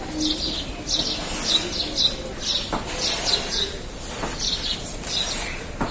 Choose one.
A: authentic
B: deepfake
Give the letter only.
A